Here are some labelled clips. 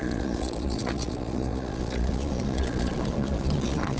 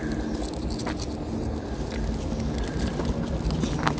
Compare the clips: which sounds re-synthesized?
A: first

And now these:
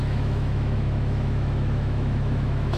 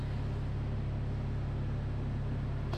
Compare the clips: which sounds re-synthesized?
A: first